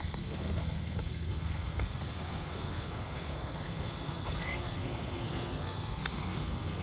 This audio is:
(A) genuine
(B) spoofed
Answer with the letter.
B